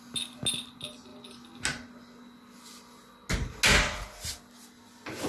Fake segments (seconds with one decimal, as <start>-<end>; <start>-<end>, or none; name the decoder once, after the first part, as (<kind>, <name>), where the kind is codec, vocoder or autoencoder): none